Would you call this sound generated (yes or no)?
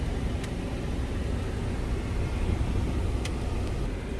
no